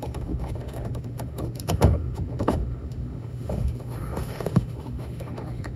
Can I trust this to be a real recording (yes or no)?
no